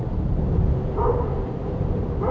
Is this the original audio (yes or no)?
yes